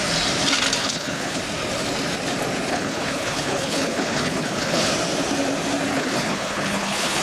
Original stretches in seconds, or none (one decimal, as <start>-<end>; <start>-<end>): 0.0-0.8; 1.4-2.7; 4.9-5.9